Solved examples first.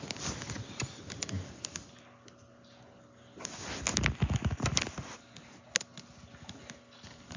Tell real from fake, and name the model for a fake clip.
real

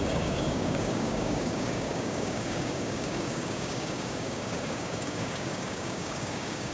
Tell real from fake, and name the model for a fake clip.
fake, codec, DAC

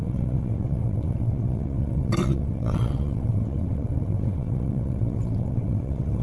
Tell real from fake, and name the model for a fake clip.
fake, vocoder, WaveNeXt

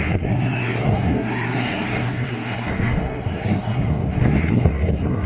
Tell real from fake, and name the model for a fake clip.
fake, codec, SNAC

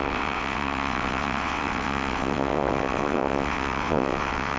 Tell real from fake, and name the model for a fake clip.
fake, vocoder, WaveNeXt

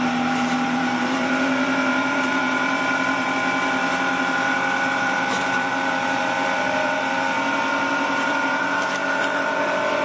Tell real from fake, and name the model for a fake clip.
fake, vocoder, BigVGAN v2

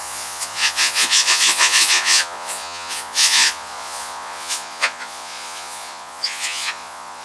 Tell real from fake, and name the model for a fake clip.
fake, vocoder, Vocos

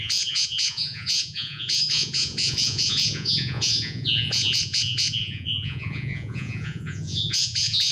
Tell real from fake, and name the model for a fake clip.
fake, vocoder, Vocos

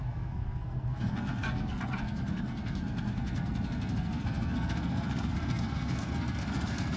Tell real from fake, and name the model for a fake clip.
fake, codec, SNAC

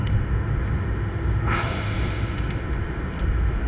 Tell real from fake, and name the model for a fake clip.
fake, autoencoder, DAC-VAE